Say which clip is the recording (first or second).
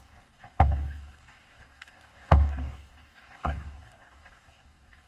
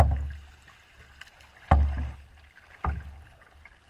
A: second